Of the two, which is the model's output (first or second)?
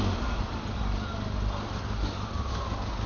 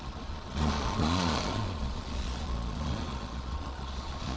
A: second